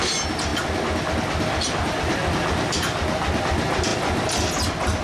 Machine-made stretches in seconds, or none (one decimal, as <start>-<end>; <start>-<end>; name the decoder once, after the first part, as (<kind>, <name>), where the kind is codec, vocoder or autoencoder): none